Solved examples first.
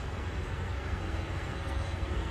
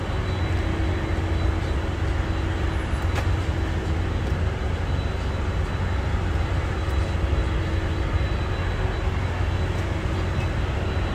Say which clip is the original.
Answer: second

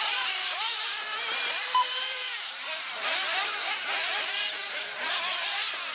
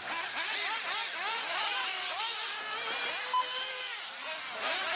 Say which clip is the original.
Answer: second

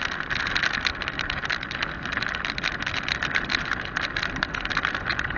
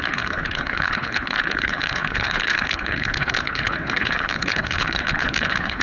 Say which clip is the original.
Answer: first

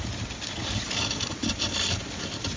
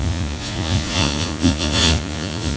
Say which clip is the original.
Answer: first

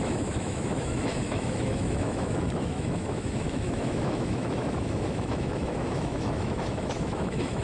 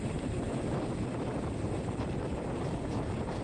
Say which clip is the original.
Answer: second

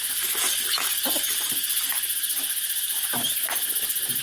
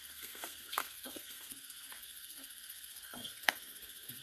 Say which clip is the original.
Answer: first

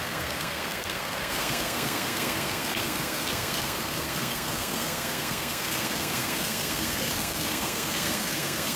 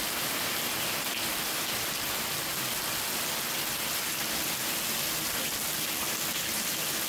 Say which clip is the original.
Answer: second